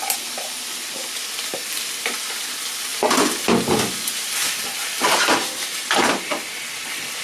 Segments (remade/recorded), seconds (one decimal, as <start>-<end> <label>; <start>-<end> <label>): 0.0-2.9 recorded; 2.9-7.2 remade